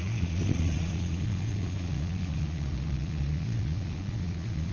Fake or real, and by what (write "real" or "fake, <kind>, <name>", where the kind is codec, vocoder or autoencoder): fake, vocoder, Vocos